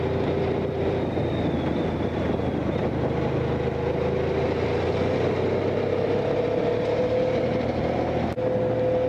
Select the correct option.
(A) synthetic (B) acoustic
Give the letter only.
B